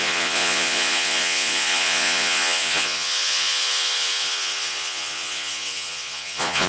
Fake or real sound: fake